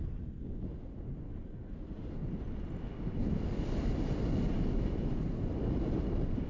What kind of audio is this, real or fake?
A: real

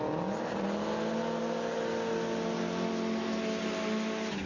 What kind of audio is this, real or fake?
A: real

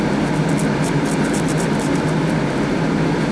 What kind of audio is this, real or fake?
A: real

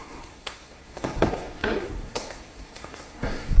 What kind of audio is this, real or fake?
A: fake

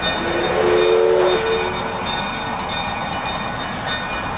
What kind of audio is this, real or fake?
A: real